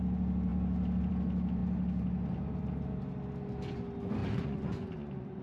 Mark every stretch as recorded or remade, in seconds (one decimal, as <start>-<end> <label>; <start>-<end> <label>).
0.0-4.2 recorded; 4.2-5.4 remade